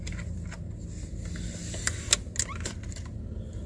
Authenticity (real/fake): real